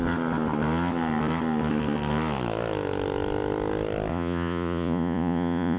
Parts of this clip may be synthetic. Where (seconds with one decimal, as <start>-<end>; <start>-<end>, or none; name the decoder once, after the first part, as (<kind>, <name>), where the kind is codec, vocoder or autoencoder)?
4.1-5.8 (vocoder, Vocos)